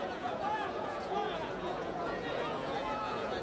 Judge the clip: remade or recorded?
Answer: remade